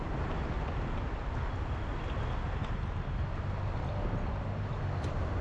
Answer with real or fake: real